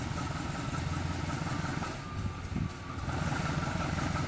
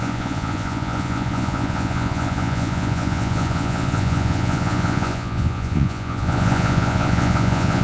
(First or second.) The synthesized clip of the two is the second